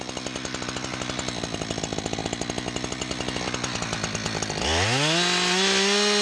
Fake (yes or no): no